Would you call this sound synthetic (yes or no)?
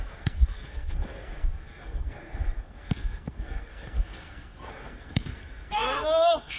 yes